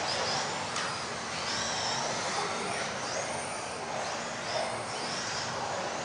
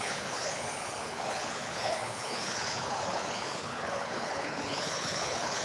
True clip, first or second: first